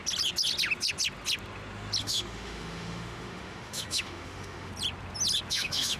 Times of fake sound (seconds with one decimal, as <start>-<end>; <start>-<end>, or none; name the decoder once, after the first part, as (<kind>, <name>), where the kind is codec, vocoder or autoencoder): 2.0-4.7 (autoencoder, DAC-VAE); 5.5-6.0